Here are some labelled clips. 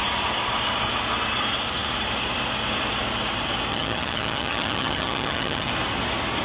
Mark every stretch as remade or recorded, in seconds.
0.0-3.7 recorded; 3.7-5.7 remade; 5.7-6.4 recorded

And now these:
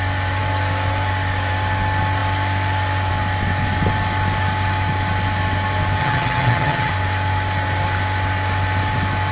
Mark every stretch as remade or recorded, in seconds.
0.0-6.0 recorded; 6.0-6.9 remade; 6.9-9.3 recorded

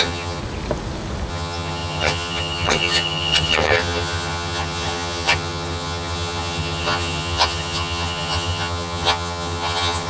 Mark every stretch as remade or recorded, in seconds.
0.0-0.4 remade; 0.4-1.3 recorded; 1.3-10.1 remade

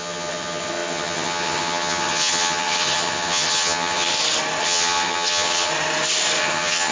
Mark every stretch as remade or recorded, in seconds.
0.0-4.1 remade; 4.1-4.6 recorded; 4.6-5.7 remade; 5.7-6.4 recorded; 6.4-6.9 remade

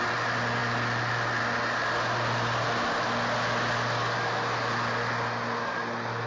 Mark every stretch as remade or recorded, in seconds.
0.0-6.3 recorded

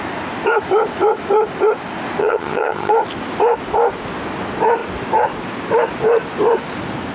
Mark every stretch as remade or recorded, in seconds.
0.0-2.2 recorded; 2.2-2.9 remade; 2.9-7.1 recorded

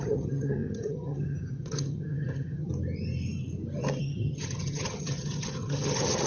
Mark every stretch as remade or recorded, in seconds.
0.0-2.7 remade; 2.7-4.0 recorded; 4.0-6.3 remade

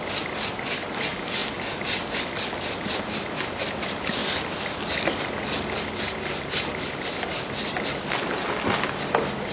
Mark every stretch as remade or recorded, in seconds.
0.0-9.5 recorded